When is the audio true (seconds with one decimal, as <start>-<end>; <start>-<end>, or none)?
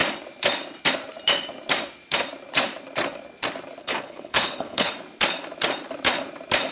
0.0-3.8; 4.9-6.7